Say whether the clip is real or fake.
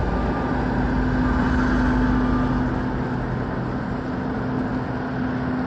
real